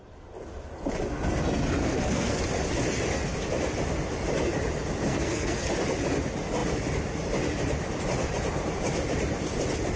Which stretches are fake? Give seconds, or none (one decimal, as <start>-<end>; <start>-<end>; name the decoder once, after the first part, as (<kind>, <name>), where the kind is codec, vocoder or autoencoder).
1.8-2.4 (codec, SNAC); 5.1-5.7